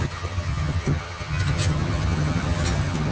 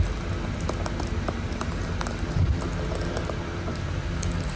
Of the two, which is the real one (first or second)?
second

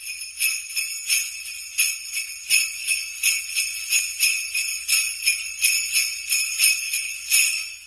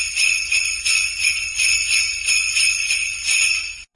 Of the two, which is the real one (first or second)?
first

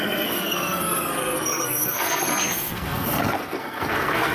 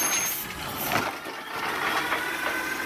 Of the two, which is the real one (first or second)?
second